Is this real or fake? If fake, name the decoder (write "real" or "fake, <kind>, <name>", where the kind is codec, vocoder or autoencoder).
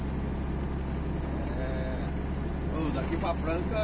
real